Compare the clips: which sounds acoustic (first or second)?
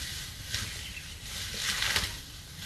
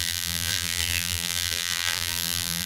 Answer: first